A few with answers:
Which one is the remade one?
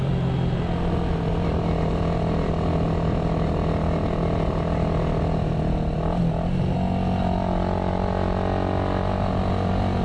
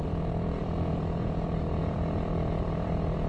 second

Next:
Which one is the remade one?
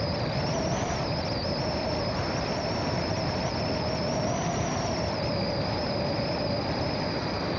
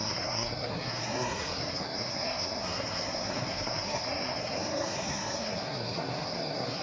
second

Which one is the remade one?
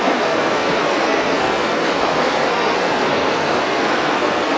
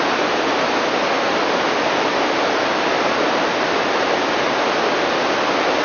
first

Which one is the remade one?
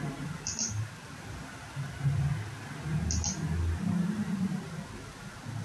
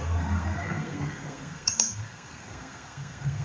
second